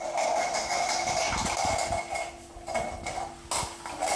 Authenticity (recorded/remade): recorded